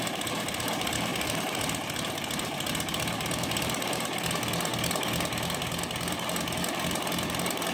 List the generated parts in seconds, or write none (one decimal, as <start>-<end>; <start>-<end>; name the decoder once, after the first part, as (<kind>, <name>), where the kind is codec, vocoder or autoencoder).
none